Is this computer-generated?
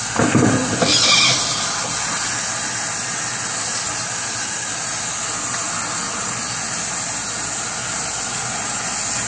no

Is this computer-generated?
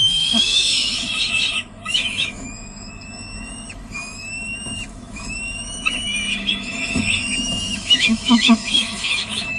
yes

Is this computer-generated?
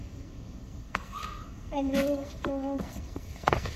yes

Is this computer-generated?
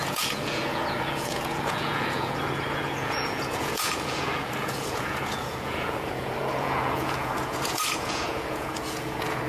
yes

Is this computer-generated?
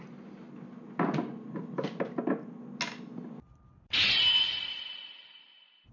no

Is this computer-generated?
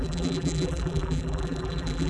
yes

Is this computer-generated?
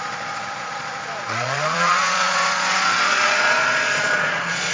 yes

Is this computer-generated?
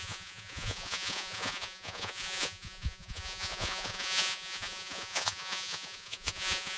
yes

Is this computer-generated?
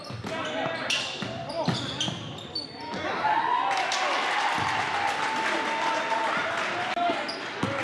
no